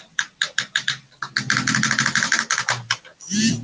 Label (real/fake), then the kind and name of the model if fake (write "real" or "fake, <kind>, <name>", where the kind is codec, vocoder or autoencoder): fake, vocoder, BigVGAN v2